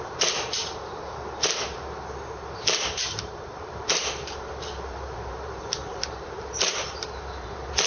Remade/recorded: remade